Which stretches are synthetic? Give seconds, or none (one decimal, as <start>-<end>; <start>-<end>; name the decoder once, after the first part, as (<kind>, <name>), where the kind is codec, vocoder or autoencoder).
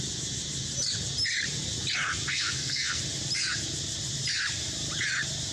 2.3-3.0 (codec, SNAC)